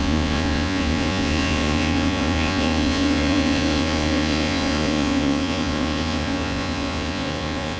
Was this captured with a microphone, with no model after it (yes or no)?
no